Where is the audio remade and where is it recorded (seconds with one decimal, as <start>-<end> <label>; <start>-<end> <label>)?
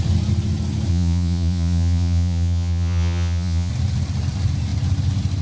0.0-0.9 recorded; 0.9-3.7 remade; 3.7-5.4 recorded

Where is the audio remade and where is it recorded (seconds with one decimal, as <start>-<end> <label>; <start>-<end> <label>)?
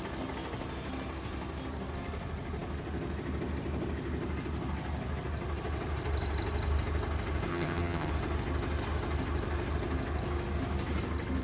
0.0-7.5 recorded; 7.5-8.1 remade; 8.1-11.4 recorded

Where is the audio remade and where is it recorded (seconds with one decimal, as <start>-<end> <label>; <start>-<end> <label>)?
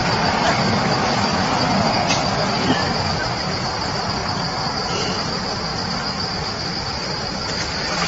0.0-0.7 remade; 0.7-8.1 recorded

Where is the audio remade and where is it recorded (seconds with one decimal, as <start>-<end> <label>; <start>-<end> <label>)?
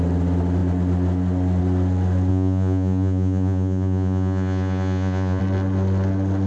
0.0-2.3 recorded; 2.3-5.4 remade; 5.4-6.5 recorded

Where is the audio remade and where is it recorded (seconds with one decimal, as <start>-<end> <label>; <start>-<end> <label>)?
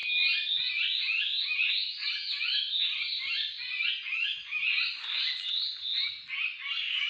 0.0-7.1 recorded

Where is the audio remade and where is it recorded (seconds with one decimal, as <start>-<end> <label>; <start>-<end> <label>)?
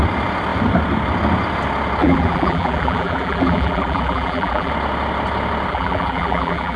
0.0-2.0 recorded; 2.0-4.7 remade; 4.7-5.7 recorded; 5.7-6.8 remade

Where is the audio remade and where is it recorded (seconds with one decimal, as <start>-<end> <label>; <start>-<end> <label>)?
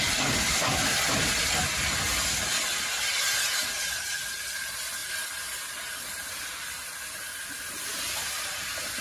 0.0-9.0 recorded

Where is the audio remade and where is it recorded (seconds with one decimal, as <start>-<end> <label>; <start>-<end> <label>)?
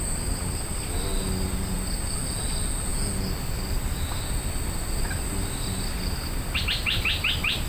0.0-7.7 recorded